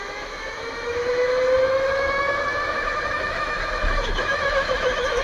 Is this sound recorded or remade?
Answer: remade